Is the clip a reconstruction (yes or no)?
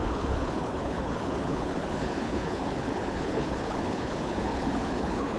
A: yes